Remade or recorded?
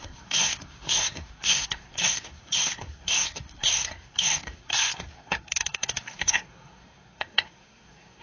remade